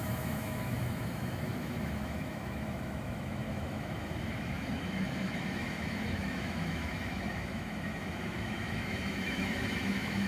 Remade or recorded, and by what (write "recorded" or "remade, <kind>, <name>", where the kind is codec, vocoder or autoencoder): remade, autoencoder, DAC-VAE